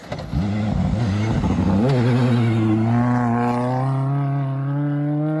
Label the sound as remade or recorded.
recorded